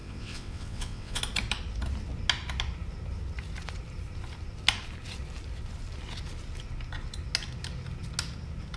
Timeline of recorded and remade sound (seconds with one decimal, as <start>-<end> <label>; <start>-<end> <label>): 0.0-1.2 remade; 1.2-8.8 recorded